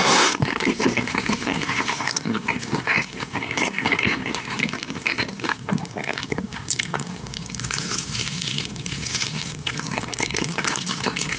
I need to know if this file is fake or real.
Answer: fake